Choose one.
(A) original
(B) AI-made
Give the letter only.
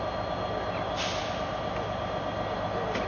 A